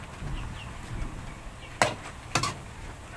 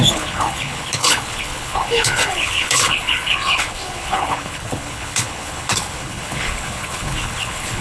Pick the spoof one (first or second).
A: second